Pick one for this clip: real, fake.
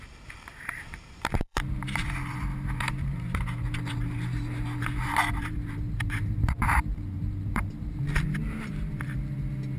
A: fake